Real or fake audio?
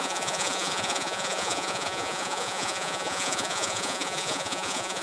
fake